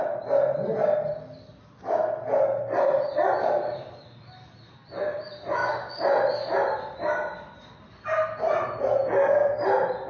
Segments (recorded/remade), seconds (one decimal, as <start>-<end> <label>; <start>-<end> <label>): 0.0-10.1 recorded